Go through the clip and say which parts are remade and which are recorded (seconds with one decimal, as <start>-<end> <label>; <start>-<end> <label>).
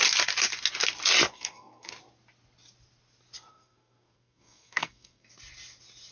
0.0-1.3 recorded; 1.3-1.9 remade; 1.9-3.5 recorded; 3.5-5.3 remade; 5.3-6.1 recorded